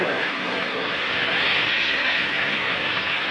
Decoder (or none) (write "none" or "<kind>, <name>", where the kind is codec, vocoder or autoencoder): codec, SNAC